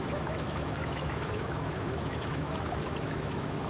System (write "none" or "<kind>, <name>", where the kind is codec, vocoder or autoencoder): autoencoder, DAC-VAE